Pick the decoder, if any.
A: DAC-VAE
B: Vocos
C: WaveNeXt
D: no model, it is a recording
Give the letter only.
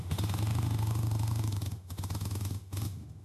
A